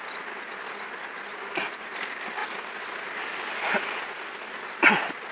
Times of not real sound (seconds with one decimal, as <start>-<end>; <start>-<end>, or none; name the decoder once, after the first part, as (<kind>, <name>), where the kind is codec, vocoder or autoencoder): none